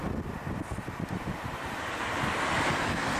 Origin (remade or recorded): remade